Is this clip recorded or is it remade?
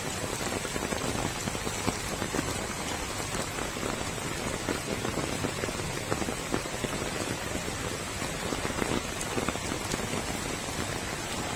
recorded